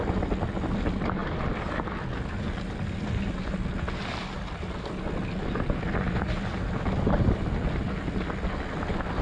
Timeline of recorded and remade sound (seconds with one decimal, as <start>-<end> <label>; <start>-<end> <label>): 0.0-9.2 recorded